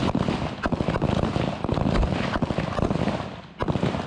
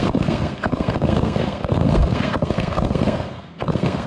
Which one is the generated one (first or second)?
second